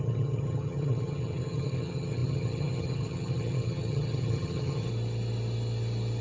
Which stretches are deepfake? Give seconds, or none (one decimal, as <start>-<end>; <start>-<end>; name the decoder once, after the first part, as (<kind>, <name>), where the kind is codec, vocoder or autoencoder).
0.0-4.9 (vocoder, HiFi-GAN)